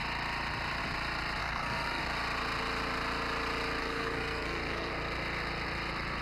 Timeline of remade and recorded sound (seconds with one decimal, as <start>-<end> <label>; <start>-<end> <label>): 0.0-1.4 recorded; 1.4-2.0 remade; 2.0-3.8 recorded; 3.8-4.9 remade; 4.9-6.2 recorded